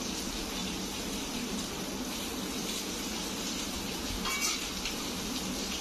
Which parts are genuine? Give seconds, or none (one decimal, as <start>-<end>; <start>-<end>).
0.0-0.6; 4.1-5.8